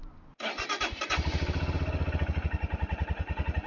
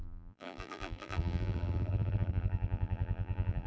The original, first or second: first